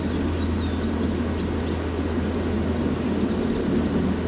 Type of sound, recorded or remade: recorded